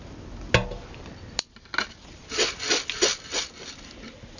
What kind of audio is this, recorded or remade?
recorded